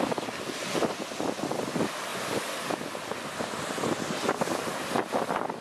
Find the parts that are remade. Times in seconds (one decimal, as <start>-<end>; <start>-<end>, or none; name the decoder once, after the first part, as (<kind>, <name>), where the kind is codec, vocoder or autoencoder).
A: none